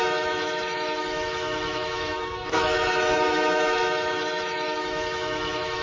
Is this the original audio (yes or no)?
no